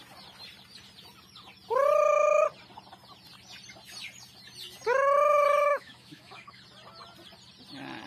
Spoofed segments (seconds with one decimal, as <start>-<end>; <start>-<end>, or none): 5.6-6.6

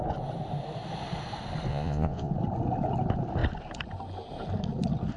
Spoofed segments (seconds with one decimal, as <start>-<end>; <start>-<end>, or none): 1.7-2.3